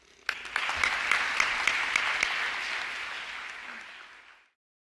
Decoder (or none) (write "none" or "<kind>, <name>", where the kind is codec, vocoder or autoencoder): none